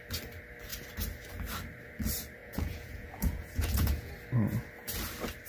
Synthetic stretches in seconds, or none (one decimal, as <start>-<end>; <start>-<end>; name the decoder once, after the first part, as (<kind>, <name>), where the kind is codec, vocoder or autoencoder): 2.4-4.1 (vocoder, Vocos)